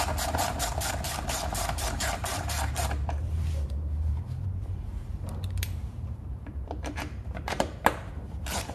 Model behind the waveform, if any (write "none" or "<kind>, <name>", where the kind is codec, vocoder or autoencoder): vocoder, BigVGAN v2